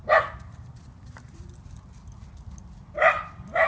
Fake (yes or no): no